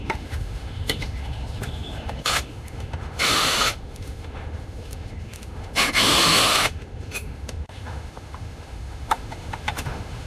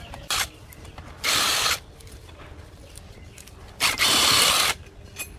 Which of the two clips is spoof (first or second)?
first